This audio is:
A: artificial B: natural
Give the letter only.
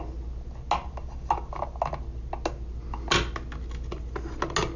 B